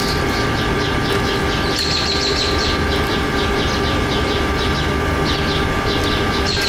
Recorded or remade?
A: recorded